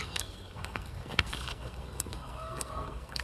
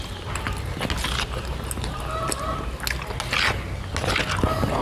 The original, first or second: second